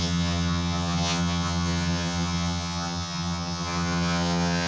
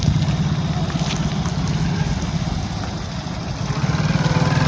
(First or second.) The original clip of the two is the second